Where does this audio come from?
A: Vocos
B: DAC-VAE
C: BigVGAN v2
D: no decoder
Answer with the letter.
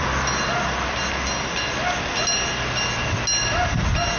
D